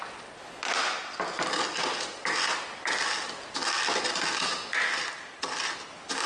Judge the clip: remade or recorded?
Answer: recorded